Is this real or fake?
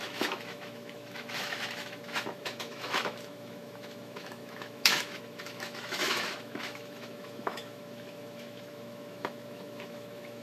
fake